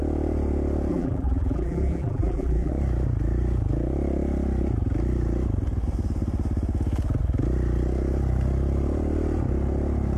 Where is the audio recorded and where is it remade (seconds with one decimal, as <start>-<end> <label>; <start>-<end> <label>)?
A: 0.0-0.9 recorded; 0.9-2.7 remade; 2.7-10.2 recorded